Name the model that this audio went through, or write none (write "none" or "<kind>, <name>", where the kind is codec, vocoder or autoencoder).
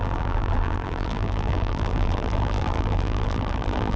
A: vocoder, BigVGAN v2